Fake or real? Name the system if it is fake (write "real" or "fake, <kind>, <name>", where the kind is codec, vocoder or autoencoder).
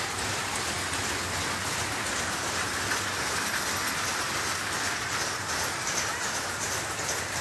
real